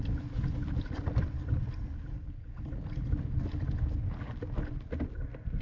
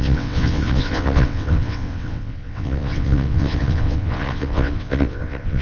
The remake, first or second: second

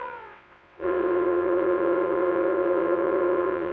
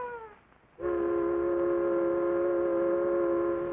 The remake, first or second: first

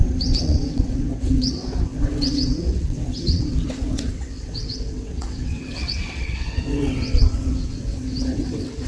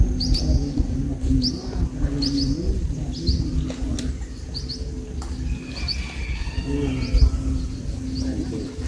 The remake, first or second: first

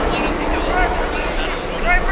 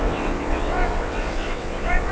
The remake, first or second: second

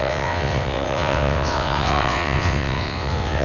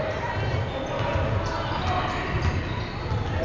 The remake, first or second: first